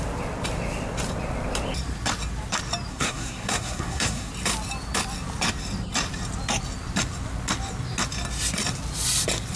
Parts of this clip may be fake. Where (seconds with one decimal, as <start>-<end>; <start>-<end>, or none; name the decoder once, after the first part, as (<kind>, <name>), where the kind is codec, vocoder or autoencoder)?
2.9-4.3 (codec, SNAC)